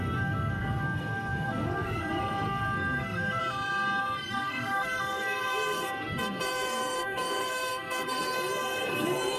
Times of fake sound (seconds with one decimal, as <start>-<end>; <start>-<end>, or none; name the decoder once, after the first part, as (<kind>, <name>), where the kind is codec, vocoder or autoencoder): 0.0-3.4 (codec, SNAC); 4.0-9.4